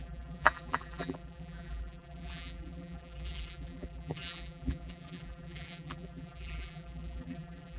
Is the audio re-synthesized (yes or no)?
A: yes